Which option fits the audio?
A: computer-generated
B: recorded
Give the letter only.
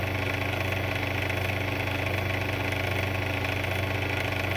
B